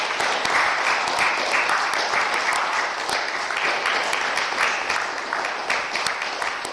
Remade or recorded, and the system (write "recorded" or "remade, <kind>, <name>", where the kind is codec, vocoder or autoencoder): recorded